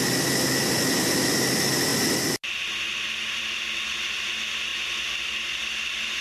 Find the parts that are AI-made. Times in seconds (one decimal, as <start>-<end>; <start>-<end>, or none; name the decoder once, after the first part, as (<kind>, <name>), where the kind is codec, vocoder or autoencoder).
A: none